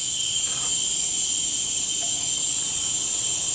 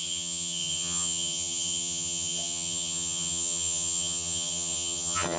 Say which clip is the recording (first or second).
first